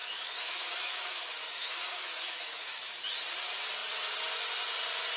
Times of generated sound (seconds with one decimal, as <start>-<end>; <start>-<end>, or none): 0.0-3.0